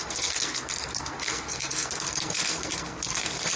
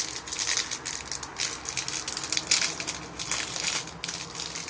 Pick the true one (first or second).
second